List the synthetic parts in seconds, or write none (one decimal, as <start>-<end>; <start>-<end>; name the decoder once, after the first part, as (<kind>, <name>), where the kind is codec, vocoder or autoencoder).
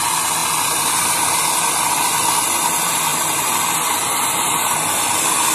3.1-5.5 (vocoder, BigVGAN v2)